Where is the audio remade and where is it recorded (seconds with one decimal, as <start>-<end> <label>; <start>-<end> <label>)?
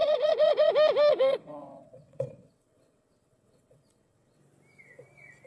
0.0-0.7 remade; 0.7-1.1 recorded; 1.1-4.4 remade; 4.4-5.5 recorded